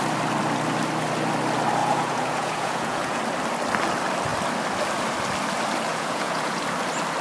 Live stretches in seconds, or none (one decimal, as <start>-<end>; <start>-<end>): 0.0-1.8; 3.2-5.9; 6.6-7.2